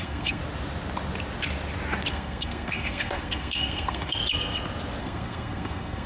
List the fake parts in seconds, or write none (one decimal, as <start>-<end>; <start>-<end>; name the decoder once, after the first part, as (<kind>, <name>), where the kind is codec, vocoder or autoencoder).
0.0-0.4 (codec, SNAC); 2.1-4.2; 5.0-6.1